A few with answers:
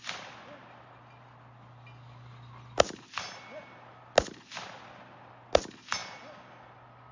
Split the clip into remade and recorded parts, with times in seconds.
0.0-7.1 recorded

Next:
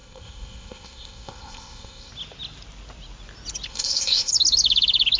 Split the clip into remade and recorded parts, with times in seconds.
0.0-2.1 remade; 2.1-3.7 recorded; 3.7-4.3 remade; 4.3-5.2 recorded